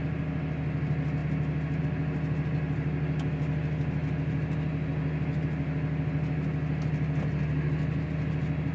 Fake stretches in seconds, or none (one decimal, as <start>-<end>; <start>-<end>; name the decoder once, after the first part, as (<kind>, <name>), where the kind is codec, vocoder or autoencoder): none